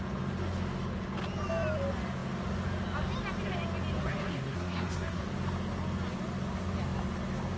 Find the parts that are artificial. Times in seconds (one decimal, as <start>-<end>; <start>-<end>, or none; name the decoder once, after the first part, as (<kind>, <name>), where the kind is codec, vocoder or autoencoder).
4.0-5.2 (codec, SNAC)